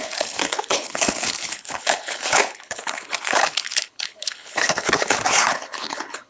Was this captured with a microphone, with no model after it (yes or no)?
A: no